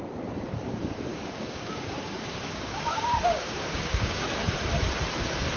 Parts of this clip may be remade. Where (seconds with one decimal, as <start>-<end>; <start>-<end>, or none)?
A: 1.1-4.5